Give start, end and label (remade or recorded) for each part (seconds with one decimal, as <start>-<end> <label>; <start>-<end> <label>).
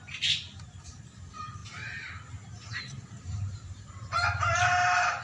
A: 0.0-1.6 recorded; 1.6-3.9 remade; 3.9-5.2 recorded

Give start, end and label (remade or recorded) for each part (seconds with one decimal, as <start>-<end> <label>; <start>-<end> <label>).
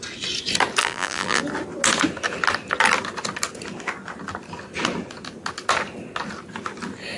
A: 0.0-0.8 recorded; 0.8-1.4 remade; 1.4-7.2 recorded